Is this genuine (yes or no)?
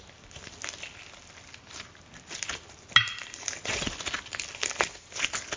yes